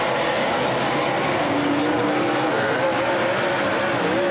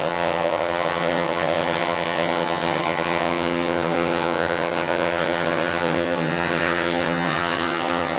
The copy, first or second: second